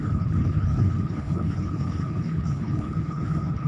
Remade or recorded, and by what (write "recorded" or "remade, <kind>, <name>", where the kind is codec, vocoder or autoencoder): remade, codec, HILCodec